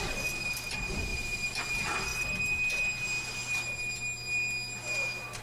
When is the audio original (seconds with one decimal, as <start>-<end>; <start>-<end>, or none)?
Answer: 0.0-5.4